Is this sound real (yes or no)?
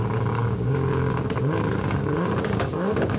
no